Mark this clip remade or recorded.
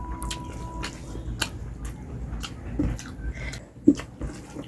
recorded